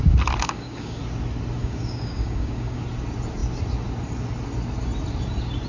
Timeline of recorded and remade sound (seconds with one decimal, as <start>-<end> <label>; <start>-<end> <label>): 0.0-0.4 recorded; 0.4-1.0 remade; 1.0-1.6 recorded; 1.6-2.8 remade; 2.8-5.7 recorded